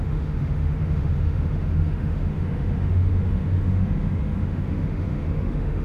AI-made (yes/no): yes